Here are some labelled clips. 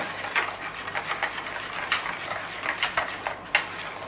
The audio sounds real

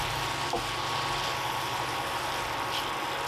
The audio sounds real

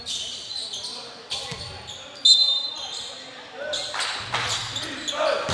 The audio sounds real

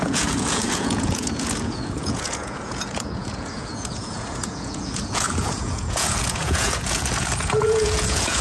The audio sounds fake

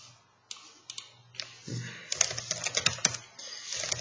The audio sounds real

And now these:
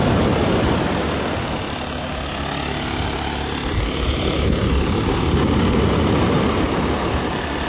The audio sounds real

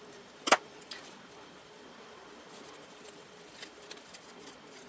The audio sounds real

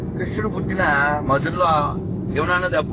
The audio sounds fake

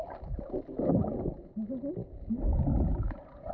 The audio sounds real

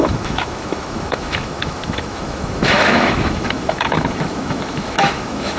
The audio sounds fake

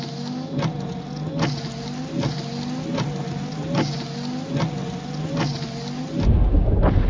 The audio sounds real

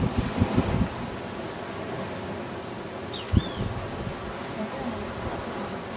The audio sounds real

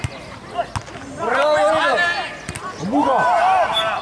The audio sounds real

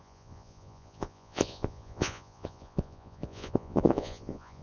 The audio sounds fake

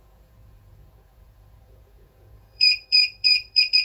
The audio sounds fake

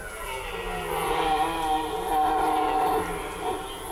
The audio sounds real